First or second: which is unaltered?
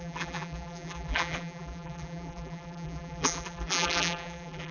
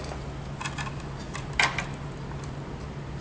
second